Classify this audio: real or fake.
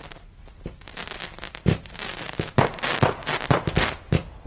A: real